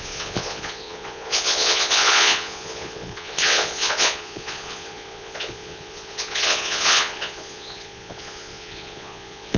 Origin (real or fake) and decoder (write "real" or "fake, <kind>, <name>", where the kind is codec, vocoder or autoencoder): fake, vocoder, Vocos